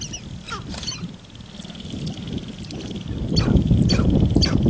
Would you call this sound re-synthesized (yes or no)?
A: no